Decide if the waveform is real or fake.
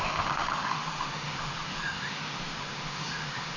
fake